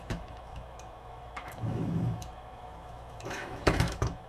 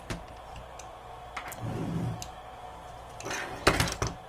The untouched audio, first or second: second